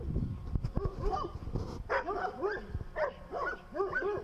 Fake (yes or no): no